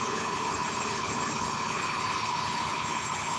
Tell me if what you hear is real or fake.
fake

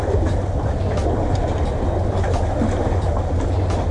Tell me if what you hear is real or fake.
real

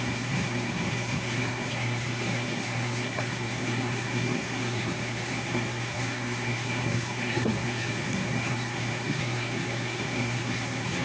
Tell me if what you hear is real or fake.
fake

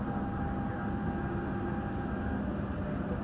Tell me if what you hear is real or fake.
real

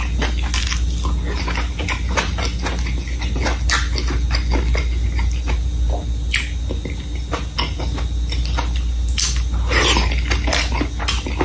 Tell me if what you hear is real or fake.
real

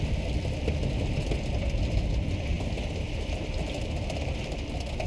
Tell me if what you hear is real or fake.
real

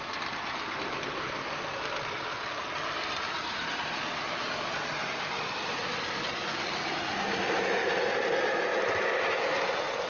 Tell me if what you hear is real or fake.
fake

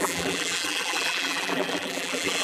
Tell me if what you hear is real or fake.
fake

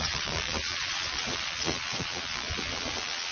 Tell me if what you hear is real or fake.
fake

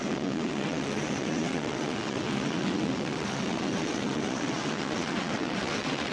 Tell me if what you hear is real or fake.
fake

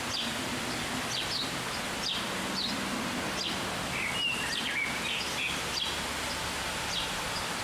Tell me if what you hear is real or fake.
real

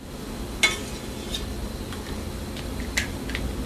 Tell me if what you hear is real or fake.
real